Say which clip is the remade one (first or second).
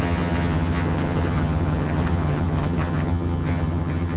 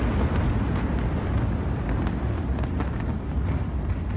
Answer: first